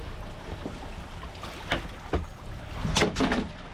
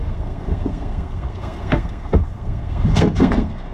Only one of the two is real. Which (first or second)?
first